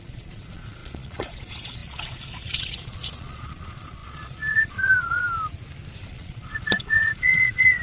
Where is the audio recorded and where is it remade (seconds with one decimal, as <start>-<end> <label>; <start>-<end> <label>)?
0.0-5.2 remade; 5.2-6.0 recorded; 6.0-7.8 remade